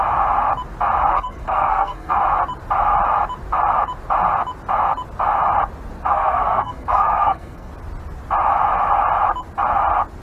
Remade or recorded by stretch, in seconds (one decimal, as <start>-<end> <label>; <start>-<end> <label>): 0.0-1.1 recorded; 1.1-2.2 remade; 2.2-6.1 recorded; 6.1-7.7 remade; 7.7-10.2 recorded